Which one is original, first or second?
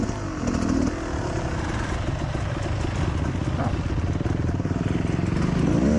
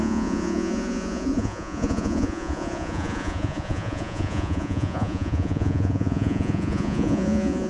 first